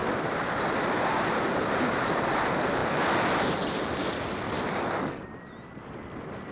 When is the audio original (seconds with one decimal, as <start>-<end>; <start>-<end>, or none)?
0.0-6.5